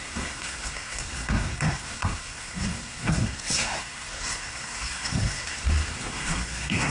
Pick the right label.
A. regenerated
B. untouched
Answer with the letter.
A